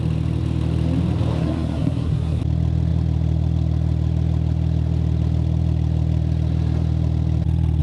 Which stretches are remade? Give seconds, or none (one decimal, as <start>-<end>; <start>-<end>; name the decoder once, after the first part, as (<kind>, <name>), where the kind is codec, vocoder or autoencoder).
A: 1.4-2.4 (codec, SNAC)